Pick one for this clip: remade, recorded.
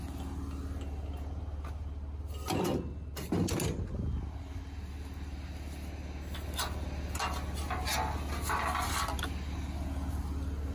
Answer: recorded